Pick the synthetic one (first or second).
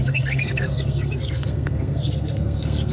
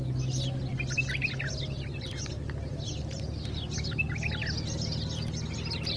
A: first